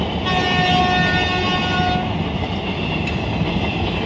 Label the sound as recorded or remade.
recorded